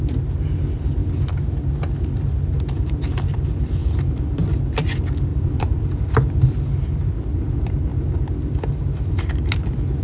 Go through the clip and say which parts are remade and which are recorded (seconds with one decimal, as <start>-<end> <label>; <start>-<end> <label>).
0.0-3.8 recorded; 3.8-4.5 remade; 4.5-5.3 recorded; 5.3-6.0 remade; 6.0-10.0 recorded